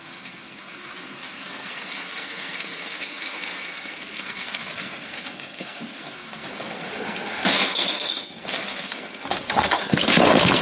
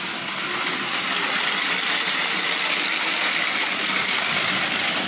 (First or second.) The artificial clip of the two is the first